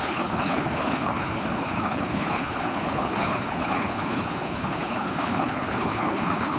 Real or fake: fake